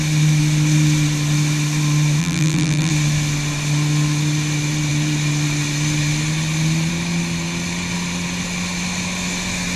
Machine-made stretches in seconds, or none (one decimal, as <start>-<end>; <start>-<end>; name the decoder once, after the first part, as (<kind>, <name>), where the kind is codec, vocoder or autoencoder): 2.2-2.9 (vocoder, BigVGAN v2)